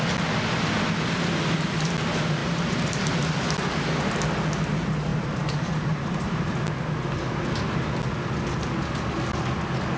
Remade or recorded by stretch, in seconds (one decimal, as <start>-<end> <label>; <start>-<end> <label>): 0.0-2.4 recorded; 2.4-2.9 remade; 2.9-5.1 recorded; 5.1-6.5 remade; 6.5-10.0 recorded